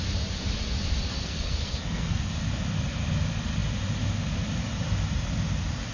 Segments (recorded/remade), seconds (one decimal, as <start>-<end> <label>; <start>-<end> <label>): 0.0-1.1 recorded; 1.1-2.3 remade; 2.3-5.9 recorded